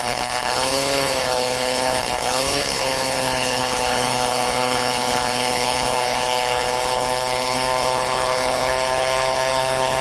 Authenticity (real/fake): fake